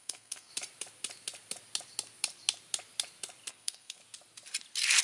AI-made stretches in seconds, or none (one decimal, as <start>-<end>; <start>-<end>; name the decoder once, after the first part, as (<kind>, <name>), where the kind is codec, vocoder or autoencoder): 0.0-0.5 (codec, SNAC); 3.5-4.0

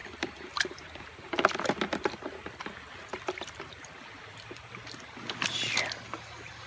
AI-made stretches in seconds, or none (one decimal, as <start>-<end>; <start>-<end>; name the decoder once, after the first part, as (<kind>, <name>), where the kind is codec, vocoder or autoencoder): 0.0-1.9 (vocoder, BigVGAN v2); 2.4-4.0

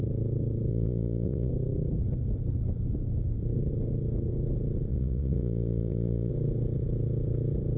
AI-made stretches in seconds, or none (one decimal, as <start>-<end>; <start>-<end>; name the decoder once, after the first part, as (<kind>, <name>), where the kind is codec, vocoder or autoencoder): 0.7-1.5 (vocoder, Vocos); 4.9-6.3

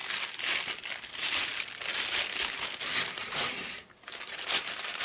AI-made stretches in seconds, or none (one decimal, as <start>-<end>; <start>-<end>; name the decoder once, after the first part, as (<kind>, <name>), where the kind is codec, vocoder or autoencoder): 1.0-1.5 (vocoder, BigVGAN v2); 3.2-5.0

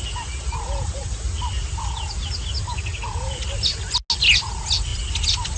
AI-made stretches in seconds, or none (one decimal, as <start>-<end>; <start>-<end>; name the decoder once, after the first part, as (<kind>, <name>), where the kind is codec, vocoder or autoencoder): none

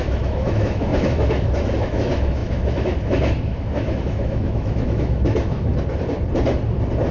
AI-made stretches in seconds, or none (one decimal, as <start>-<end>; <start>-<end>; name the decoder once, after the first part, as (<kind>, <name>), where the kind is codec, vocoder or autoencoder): 0.0-5.7 (autoencoder, DAC-VAE)